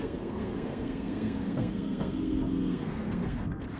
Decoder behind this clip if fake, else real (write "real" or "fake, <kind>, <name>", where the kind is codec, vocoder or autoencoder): fake, codec, SNAC